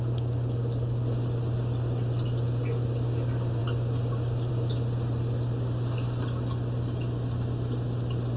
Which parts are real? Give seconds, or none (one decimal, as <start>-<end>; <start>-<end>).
0.0-8.4